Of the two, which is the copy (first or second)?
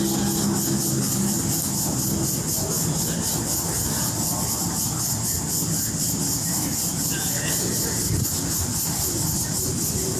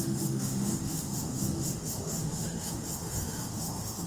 second